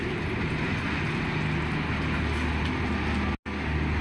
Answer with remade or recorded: recorded